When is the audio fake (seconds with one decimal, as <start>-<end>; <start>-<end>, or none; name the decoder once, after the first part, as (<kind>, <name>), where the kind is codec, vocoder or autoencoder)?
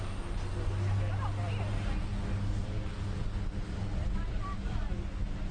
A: none